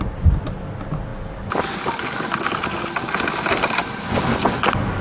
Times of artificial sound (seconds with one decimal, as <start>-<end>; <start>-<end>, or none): none